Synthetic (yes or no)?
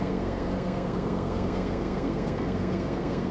yes